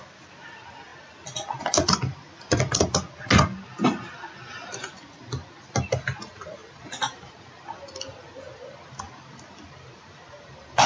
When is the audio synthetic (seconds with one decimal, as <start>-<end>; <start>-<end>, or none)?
none

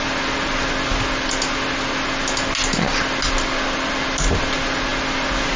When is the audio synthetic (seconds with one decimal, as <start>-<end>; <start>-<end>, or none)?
none